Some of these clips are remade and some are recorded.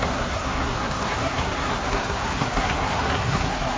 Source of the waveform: remade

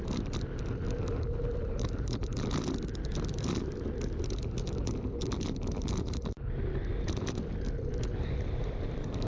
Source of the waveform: recorded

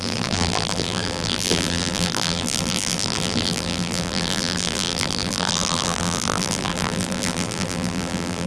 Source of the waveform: remade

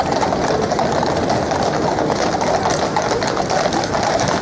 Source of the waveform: recorded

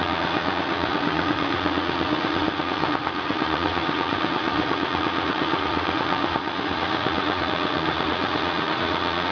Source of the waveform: remade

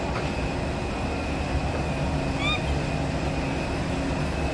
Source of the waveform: recorded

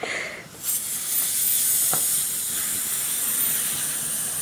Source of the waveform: recorded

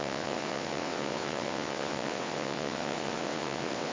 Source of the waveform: remade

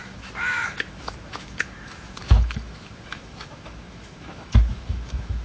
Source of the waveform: remade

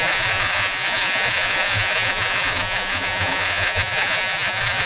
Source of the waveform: remade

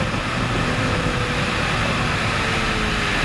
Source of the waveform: recorded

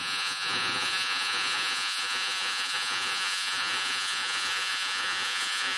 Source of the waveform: remade